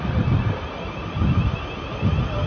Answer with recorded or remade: recorded